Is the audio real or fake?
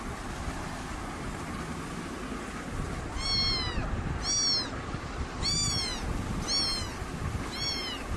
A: real